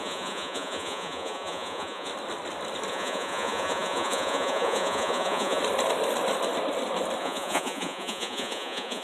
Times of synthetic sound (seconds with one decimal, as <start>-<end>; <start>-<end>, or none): 0.0-2.1; 2.9-5.6; 7.2-9.0